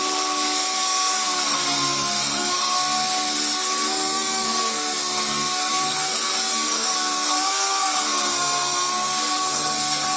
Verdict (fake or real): fake